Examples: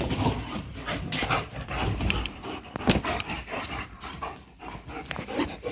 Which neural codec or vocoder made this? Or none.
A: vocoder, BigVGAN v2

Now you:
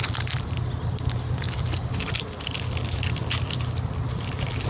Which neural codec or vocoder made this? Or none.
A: none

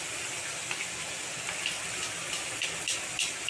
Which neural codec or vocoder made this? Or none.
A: none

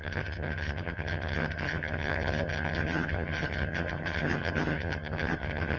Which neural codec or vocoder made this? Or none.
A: vocoder, HiFi-GAN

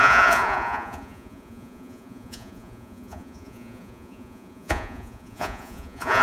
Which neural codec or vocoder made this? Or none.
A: vocoder, Vocos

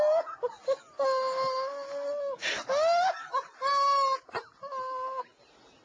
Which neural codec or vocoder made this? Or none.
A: none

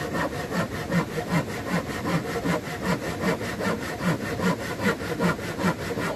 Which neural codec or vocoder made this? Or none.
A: none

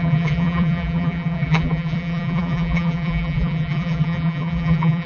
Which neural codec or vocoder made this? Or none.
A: vocoder, BigVGAN v2